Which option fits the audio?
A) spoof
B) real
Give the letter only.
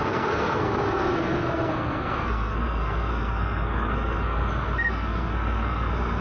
A